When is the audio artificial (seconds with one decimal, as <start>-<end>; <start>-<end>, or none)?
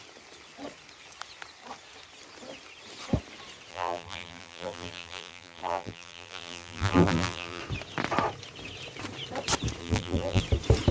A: 3.7-7.6; 9.8-10.4